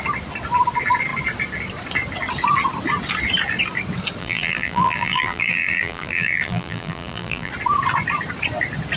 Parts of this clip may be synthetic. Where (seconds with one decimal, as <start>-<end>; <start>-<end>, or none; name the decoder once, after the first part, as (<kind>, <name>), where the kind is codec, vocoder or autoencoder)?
4.2-7.5 (vocoder, BigVGAN v2)